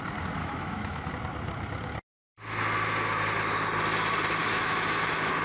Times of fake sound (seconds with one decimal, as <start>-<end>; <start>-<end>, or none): 0.4-1.1; 4.4-5.4